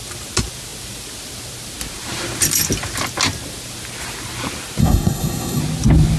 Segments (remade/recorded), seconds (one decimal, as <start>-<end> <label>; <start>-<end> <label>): 0.0-4.8 recorded; 4.8-5.6 remade; 5.6-6.2 recorded